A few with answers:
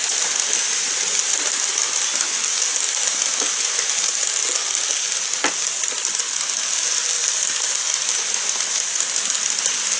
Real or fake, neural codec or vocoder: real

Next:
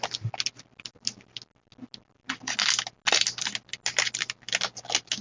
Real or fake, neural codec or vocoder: real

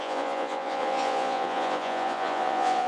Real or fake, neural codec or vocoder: fake, vocoder, Vocos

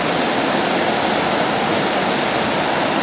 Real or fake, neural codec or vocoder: real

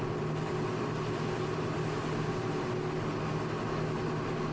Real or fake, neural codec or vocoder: real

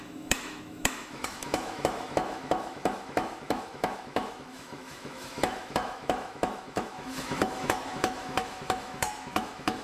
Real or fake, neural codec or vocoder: fake, autoencoder, DAC-VAE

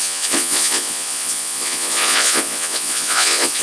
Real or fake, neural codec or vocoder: fake, vocoder, Vocos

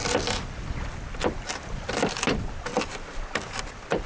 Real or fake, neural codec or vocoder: real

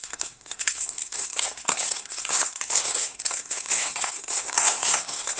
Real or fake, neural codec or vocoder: fake, codec, SNAC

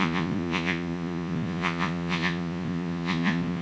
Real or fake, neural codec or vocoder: fake, vocoder, Vocos